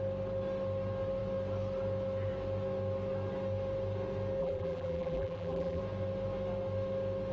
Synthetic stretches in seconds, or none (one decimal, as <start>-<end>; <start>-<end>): 4.4-5.8